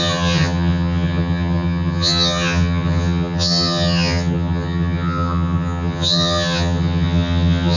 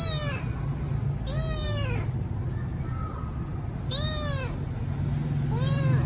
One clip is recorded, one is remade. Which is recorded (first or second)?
second